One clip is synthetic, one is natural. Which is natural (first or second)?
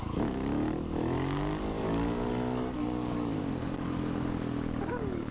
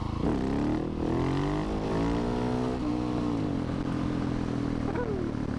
second